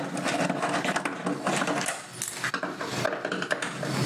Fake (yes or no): no